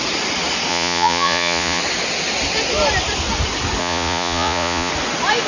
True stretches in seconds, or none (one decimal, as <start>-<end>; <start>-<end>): 0.0-0.7; 1.8-3.8; 4.9-5.5